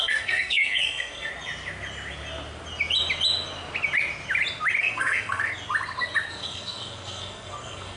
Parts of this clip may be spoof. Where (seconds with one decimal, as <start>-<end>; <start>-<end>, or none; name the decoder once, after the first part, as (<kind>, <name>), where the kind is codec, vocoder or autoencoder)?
0.0-1.3 (codec, SNAC); 4.8-5.5; 6.3-8.0